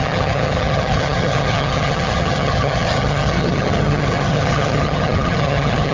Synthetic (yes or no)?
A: yes